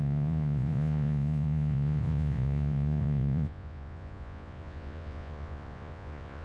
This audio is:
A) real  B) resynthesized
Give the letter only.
B